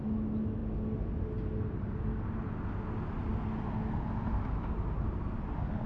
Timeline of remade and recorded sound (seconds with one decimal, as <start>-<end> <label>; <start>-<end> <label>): 0.0-5.9 recorded